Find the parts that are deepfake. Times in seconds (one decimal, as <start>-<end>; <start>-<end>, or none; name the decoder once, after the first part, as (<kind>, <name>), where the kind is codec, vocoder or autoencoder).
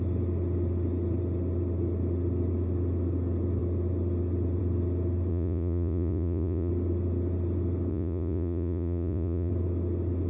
5.3-6.7 (vocoder, Vocos); 7.9-9.5